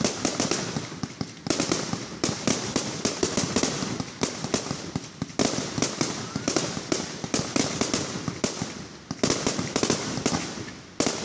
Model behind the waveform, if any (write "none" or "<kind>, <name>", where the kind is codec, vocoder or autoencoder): none